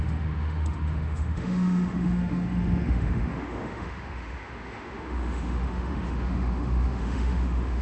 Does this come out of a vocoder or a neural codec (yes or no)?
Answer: yes